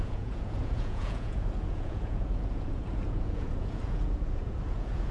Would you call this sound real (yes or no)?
no